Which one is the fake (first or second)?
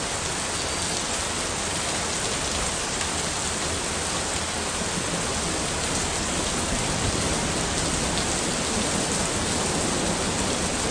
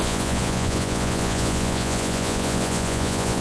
second